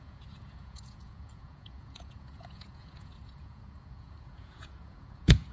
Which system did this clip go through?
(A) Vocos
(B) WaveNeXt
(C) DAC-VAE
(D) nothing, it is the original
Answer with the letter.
A